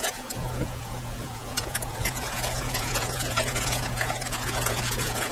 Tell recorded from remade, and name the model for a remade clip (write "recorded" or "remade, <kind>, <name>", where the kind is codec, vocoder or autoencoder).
remade, vocoder, Vocos